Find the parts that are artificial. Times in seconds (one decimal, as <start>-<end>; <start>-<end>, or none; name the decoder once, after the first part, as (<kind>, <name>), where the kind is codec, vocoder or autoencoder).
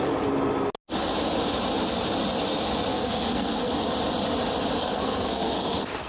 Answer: 2.9-3.7 (codec, SNAC); 4.8-6.1